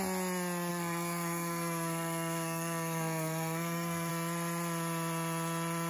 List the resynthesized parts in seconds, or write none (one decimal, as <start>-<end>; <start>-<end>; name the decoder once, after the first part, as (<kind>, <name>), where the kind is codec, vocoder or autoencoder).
0.7-4.1 (codec, SNAC)